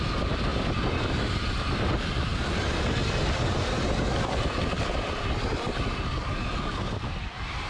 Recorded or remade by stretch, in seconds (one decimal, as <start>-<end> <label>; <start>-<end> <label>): 0.0-7.7 recorded